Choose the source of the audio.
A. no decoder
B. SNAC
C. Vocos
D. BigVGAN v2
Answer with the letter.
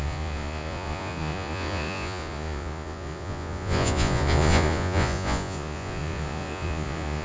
C